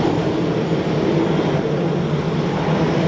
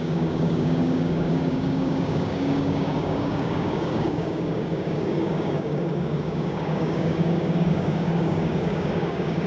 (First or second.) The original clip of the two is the first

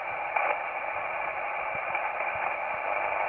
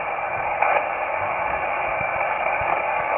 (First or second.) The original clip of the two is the first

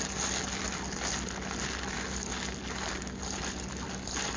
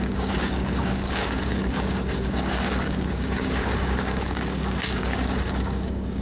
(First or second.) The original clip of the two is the first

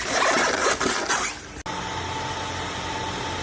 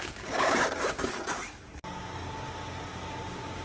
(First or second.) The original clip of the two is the first